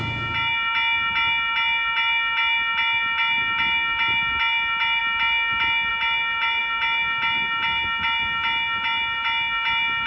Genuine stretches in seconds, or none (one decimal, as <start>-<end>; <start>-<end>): 0.0-10.1